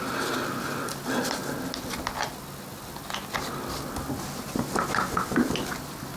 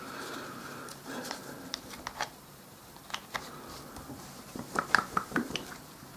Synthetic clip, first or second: second